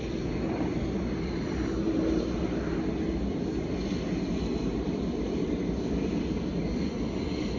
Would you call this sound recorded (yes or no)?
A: yes